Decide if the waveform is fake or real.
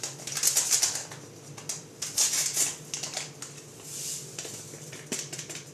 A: real